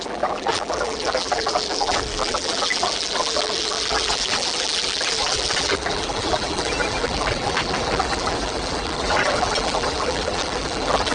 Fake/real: fake